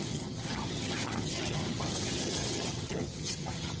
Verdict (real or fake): fake